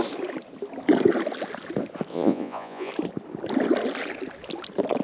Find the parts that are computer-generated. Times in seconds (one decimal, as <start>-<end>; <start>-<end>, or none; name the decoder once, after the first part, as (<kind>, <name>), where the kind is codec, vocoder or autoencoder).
2.1-2.9 (vocoder, Vocos)